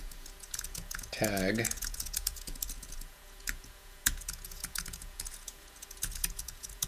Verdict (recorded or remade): remade